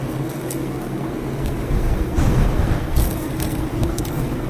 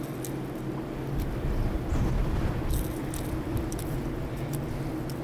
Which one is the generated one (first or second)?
first